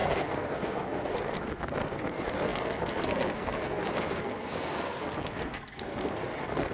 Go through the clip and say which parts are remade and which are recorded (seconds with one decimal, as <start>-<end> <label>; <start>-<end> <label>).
0.0-6.7 remade